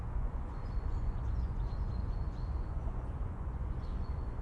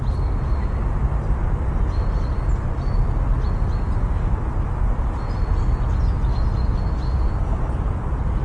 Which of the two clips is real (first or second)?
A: second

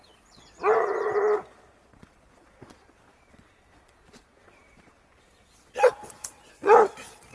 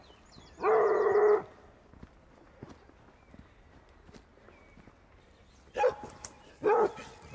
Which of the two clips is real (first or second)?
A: second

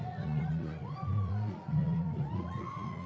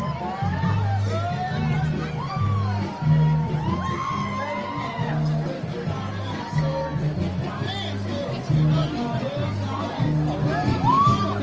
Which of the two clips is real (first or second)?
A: second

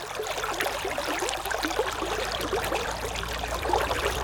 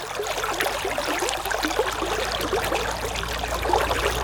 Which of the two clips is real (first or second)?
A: second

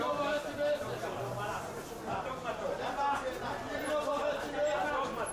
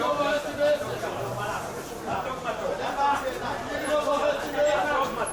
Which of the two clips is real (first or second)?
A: first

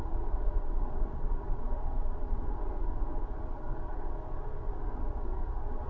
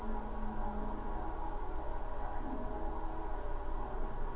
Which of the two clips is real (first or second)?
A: second